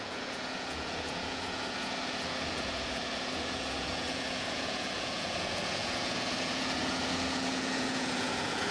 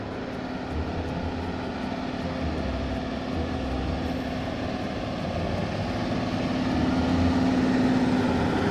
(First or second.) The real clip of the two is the second